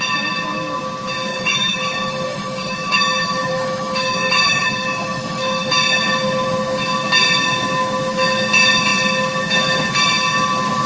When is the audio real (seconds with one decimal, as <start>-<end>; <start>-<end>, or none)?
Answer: 0.0-1.3; 5.7-10.9